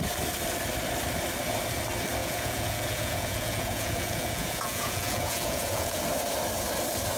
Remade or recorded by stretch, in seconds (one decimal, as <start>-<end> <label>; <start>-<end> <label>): 0.0-2.2 recorded; 2.2-6.0 remade; 6.0-7.2 recorded